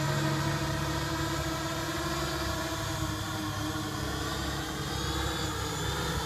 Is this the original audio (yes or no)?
yes